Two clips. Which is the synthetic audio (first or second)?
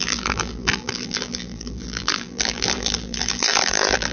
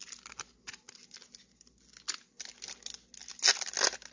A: first